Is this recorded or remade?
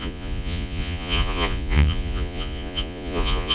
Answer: remade